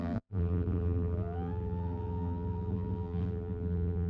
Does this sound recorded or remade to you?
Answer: remade